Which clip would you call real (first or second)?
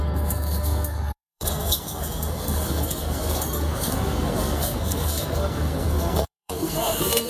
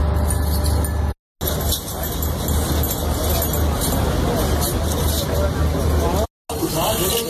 second